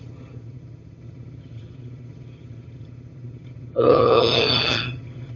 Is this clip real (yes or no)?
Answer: no